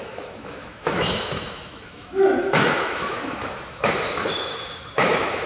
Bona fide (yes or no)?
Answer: no